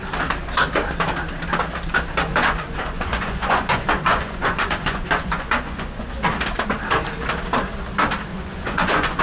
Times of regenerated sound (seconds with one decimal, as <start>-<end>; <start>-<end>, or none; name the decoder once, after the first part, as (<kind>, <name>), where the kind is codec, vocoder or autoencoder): 2.3-6.1 (vocoder, Vocos); 8.3-9.2